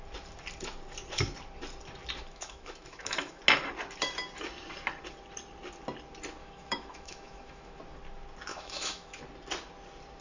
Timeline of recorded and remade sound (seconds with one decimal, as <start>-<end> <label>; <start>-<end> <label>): 0.0-2.3 recorded; 2.3-3.4 remade; 3.4-6.4 recorded; 6.4-7.8 remade; 7.8-8.5 recorded; 8.5-9.2 remade; 9.2-10.2 recorded